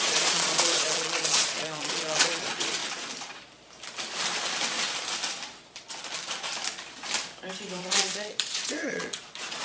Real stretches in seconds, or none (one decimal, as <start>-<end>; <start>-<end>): 2.8-7.8